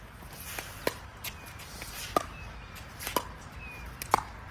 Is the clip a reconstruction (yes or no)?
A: no